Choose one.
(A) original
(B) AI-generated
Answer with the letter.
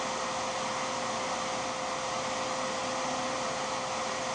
A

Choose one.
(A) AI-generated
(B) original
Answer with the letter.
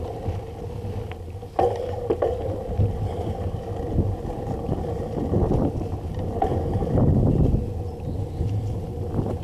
B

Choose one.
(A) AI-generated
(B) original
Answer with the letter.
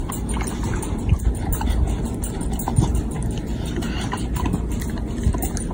B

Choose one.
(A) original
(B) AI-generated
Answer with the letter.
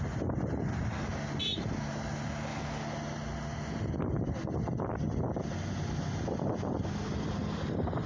A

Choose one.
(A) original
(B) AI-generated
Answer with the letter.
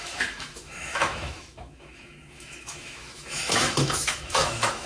B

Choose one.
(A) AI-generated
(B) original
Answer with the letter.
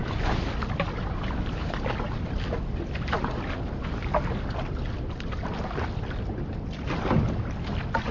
B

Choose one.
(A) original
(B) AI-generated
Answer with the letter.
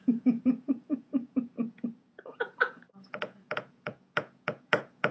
B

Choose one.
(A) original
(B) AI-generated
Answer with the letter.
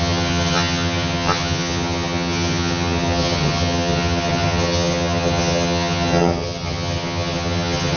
B